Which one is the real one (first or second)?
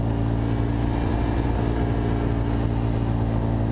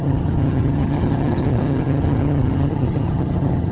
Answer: first